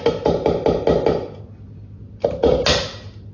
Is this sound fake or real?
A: real